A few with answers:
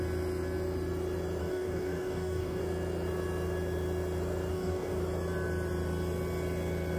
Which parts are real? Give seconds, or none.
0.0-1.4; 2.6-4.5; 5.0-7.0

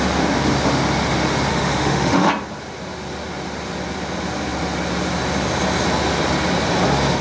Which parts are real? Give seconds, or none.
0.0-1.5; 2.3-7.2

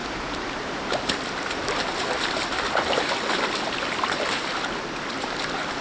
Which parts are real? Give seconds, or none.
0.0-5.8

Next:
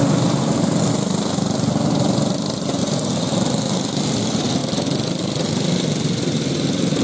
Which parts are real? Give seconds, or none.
0.0-7.0

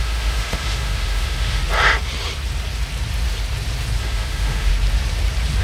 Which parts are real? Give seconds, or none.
1.6-4.0; 4.7-5.6